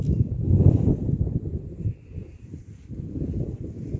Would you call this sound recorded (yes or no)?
yes